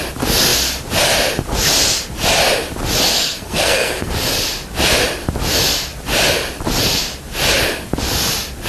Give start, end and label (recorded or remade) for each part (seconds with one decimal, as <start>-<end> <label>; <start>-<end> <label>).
0.0-3.1 recorded; 3.1-4.1 remade; 4.1-8.7 recorded